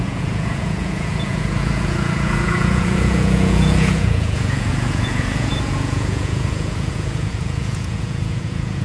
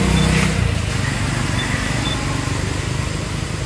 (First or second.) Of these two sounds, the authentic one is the second